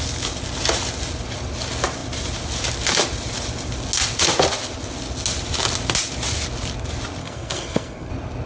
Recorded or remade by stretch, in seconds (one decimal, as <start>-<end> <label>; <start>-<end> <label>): 0.0-7.2 recorded; 7.2-8.1 remade; 8.1-8.5 recorded